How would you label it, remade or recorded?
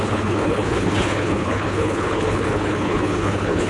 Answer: remade